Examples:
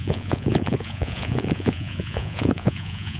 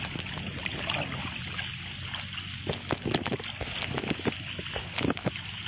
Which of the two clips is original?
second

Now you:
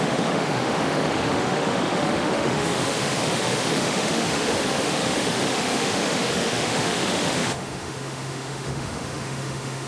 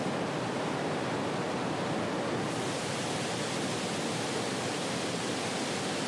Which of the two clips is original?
second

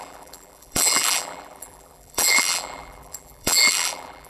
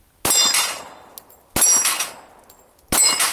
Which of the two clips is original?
second